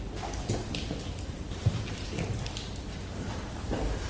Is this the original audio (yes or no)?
yes